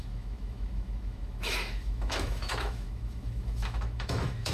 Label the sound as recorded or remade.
remade